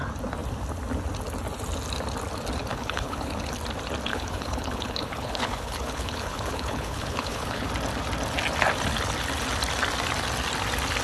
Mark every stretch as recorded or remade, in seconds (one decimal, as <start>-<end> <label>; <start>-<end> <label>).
0.0-2.7 recorded; 2.7-3.3 remade; 3.3-4.1 recorded; 4.1-7.7 remade; 7.7-11.0 recorded